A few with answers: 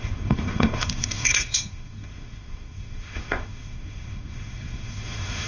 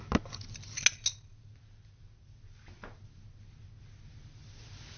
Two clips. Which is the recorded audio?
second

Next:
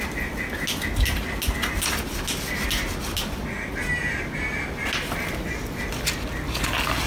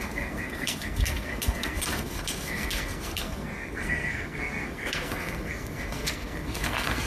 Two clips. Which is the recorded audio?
first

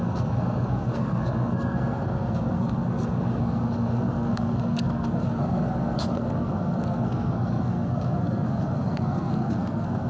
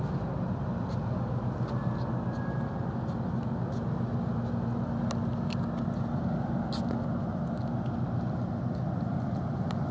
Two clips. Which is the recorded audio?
second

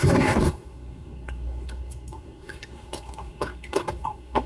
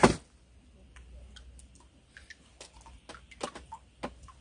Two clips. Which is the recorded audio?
second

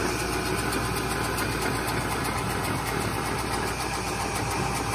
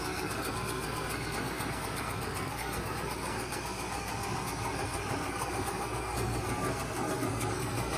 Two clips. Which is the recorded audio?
first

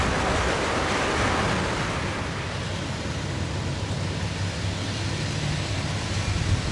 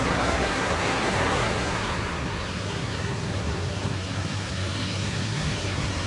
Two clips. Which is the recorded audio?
first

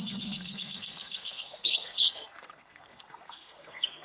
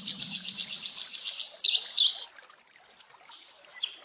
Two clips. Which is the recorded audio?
second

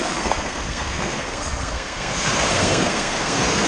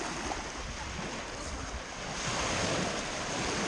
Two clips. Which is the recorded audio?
second